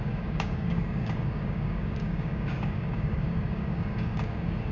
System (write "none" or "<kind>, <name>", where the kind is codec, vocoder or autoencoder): codec, DAC